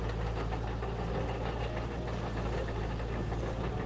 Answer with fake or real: real